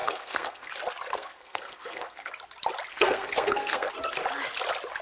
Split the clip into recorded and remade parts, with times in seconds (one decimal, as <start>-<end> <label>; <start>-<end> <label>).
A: 0.0-0.7 remade; 0.7-1.1 recorded; 1.1-2.3 remade; 2.3-2.9 recorded; 2.9-3.9 remade; 3.9-5.0 recorded